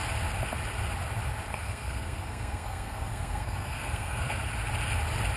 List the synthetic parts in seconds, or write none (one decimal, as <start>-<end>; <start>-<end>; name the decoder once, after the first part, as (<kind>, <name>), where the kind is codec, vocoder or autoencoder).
1.5-4.4 (codec, SNAC)